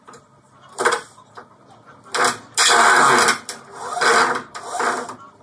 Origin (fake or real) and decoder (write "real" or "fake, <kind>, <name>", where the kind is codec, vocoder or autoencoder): real